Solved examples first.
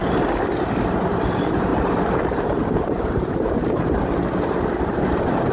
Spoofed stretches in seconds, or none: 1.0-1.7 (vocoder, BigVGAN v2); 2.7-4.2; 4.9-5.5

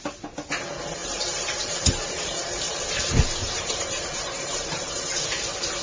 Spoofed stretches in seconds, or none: 1.0-2.8 (vocoder, BigVGAN v2); 3.4-5.2

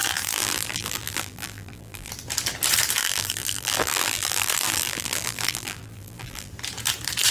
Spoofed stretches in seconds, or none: 0.0-2.1 (vocoder, BigVGAN v2); 3.0-6.5

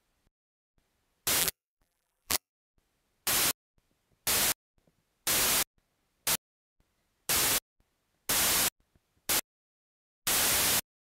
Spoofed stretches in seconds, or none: 1.4-2.5 (vocoder, BigVGAN v2)

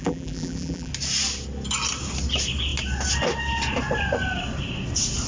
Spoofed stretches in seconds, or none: 0.0-0.9 (vocoder, BigVGAN v2)

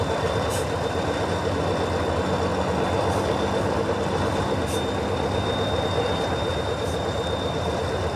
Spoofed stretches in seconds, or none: none

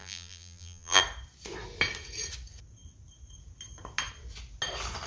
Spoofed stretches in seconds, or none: 0.0-1.0 (vocoder, BigVGAN v2)